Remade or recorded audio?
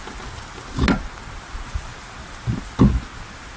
recorded